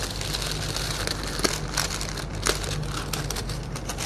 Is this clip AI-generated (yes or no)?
no